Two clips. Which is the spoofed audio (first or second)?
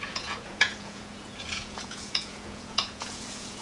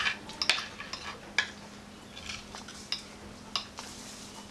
first